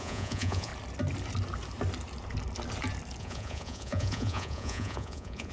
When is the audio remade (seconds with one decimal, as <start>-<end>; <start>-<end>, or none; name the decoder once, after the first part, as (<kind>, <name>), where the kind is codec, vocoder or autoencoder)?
0.0-0.7 (vocoder, Vocos); 3.2-5.5